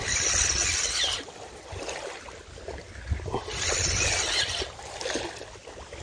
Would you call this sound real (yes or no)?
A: yes